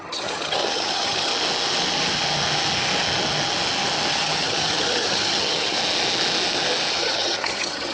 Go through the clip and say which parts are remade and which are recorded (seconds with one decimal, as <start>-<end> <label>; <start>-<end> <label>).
0.0-1.3 remade; 1.3-4.1 recorded; 4.1-5.8 remade; 5.8-6.9 recorded; 6.9-7.9 remade